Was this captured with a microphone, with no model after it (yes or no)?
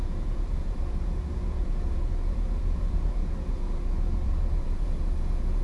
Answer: no